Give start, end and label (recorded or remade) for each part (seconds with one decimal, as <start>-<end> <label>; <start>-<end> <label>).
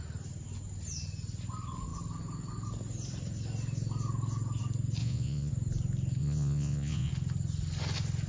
0.0-5.0 recorded; 5.0-5.5 remade; 5.5-6.2 recorded; 6.2-7.1 remade; 7.1-8.3 recorded